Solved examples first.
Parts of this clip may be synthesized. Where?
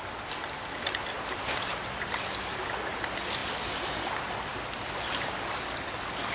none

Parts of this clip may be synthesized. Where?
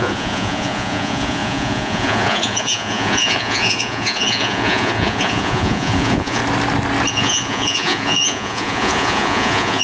0.0-6.4 (vocoder, Vocos); 7.1-9.8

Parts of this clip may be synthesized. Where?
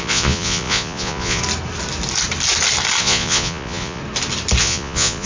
0.0-1.4 (vocoder, Vocos); 3.0-4.0; 4.6-5.3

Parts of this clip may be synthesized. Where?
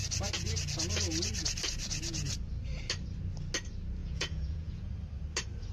4.0-4.9 (vocoder, Vocos)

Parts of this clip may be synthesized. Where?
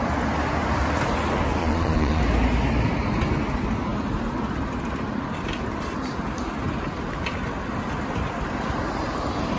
1.6-2.2 (vocoder, Vocos)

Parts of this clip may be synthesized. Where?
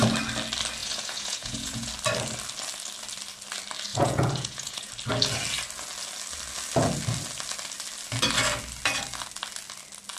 0.8-1.9 (vocoder, Vocos); 3.9-4.9